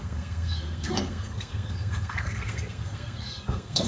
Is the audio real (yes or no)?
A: no